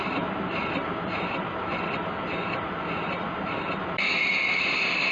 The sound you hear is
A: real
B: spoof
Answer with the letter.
A